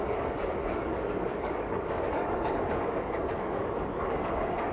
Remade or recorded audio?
remade